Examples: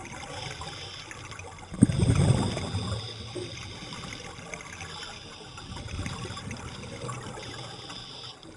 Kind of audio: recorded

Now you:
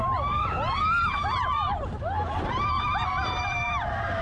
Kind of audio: recorded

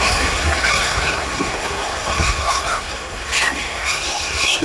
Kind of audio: remade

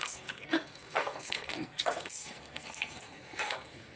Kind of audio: remade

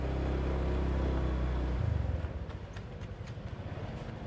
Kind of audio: recorded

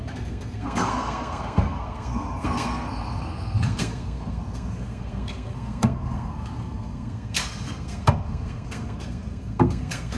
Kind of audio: remade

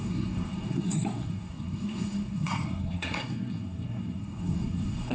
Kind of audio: remade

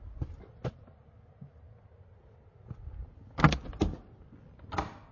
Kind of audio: recorded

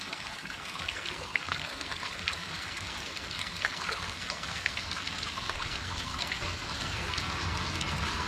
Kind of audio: remade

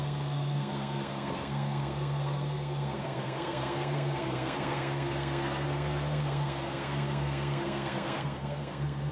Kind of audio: remade